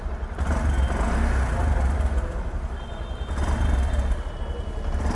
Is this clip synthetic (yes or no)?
no